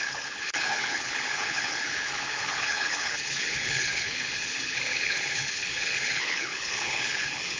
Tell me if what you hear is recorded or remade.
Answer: remade